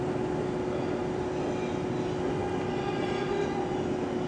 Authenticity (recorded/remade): recorded